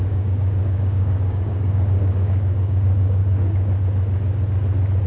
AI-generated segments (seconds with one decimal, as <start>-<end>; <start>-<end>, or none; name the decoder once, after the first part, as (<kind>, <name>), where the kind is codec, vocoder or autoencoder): 0.0-3.2 (codec, DAC)